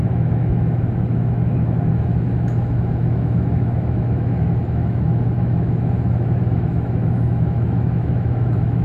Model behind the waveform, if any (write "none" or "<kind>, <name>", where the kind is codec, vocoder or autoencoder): autoencoder, DAC-VAE